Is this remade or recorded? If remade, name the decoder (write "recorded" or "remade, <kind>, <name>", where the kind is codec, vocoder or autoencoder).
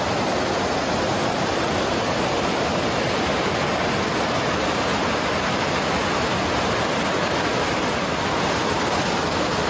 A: recorded